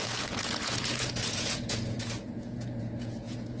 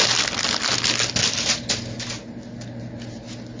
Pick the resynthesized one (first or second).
first